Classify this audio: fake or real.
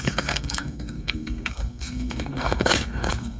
fake